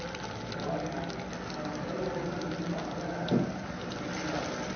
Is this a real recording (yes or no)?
yes